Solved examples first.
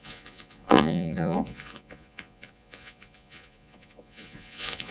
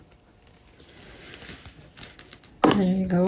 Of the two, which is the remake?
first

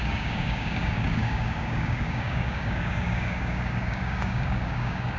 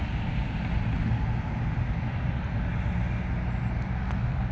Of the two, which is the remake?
first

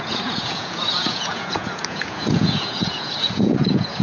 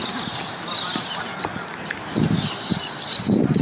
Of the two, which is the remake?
first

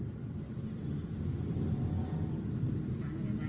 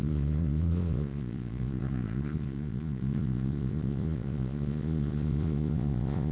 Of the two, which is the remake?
second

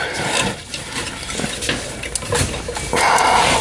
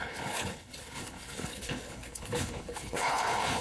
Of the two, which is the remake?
second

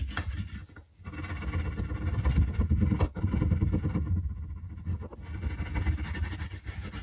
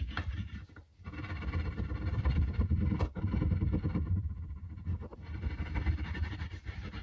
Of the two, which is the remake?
second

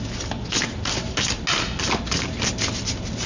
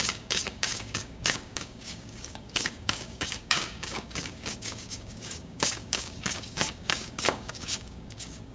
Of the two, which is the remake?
second